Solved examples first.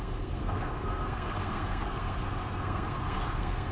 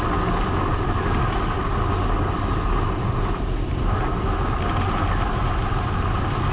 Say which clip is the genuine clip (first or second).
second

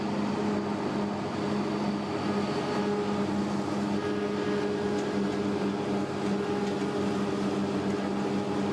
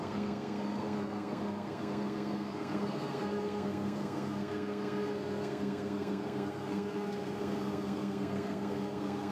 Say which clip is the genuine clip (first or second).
first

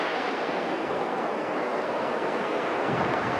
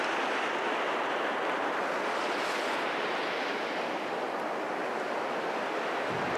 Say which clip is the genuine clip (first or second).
second